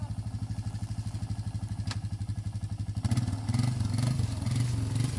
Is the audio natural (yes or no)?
yes